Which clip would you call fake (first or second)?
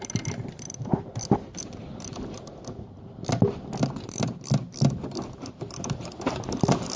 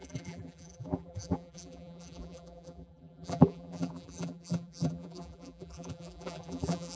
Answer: second